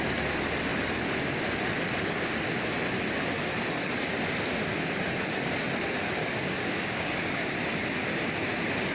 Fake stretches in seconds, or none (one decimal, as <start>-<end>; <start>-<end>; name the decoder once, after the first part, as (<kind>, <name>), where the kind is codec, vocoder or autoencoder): 6.2-7.5 (codec, DAC)